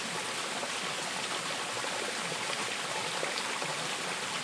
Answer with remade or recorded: recorded